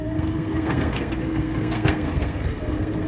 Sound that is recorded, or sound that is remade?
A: remade